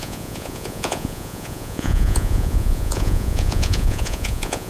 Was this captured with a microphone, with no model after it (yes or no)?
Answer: no